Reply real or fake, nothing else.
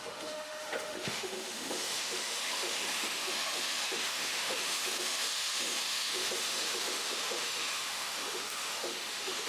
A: fake